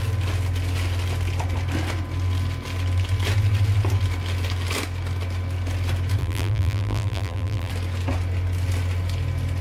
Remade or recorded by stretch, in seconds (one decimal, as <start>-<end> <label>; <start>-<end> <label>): 0.0-6.2 recorded; 6.2-7.7 remade; 7.7-9.6 recorded